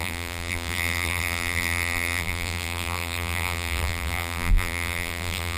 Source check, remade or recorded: remade